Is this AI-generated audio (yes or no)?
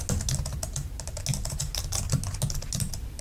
no